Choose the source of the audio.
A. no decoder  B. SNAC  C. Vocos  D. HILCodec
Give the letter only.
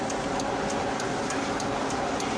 A